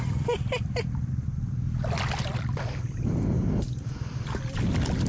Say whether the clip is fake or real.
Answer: real